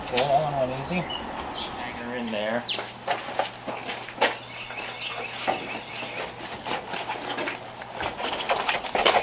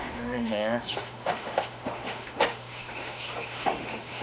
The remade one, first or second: second